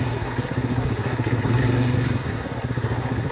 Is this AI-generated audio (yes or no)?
yes